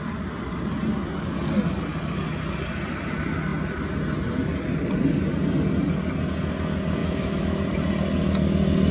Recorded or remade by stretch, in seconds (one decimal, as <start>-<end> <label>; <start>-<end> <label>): 0.0-7.0 recorded; 7.0-7.6 remade; 7.6-8.9 recorded